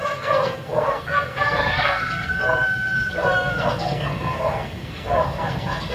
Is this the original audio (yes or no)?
no